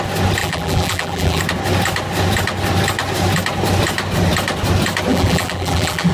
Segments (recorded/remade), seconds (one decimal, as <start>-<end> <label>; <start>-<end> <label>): 0.0-0.4 recorded; 0.4-1.4 remade; 1.4-5.1 recorded; 5.1-6.1 remade